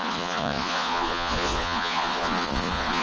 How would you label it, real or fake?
fake